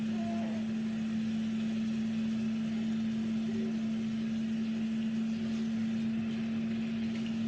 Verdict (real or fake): real